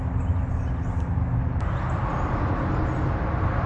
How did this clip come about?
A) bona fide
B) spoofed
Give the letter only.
A